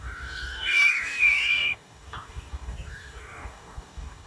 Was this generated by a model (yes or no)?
yes